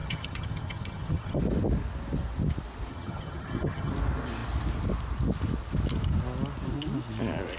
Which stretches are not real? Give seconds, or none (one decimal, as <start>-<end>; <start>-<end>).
0.0-1.4; 2.9-3.9